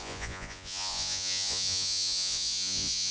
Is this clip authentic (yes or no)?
no